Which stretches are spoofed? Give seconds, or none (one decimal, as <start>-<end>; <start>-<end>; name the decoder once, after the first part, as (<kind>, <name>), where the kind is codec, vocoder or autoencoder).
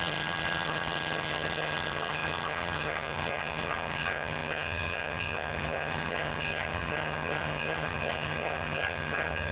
0.0-9.5 (vocoder, HiFi-GAN)